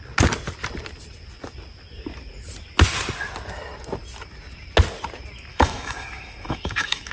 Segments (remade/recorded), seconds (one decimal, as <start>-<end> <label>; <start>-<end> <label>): 0.0-5.5 recorded; 5.5-7.1 remade